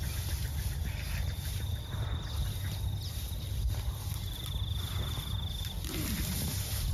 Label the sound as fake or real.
fake